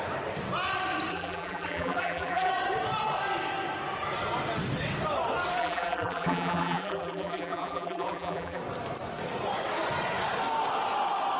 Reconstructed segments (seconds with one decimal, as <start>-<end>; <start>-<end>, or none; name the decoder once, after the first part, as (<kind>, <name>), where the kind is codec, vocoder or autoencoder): 1.1-2.5 (vocoder, BigVGAN v2); 5.6-8.6